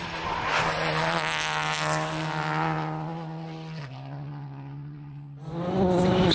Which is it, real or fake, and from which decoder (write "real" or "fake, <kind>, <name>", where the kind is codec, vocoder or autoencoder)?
real